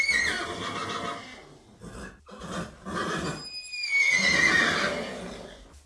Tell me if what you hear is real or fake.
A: real